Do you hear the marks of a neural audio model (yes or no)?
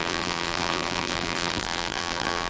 yes